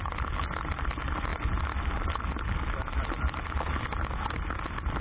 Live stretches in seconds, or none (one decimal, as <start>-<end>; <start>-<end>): 0.0-5.0